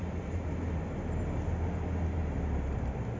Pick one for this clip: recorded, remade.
recorded